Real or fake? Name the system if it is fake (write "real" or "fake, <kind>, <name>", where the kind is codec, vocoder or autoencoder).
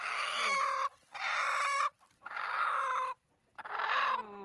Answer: real